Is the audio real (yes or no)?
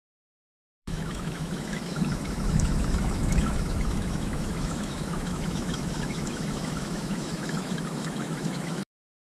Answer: no